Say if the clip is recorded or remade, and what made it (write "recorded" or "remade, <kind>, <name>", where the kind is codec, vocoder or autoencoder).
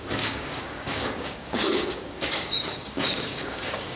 remade, codec, DAC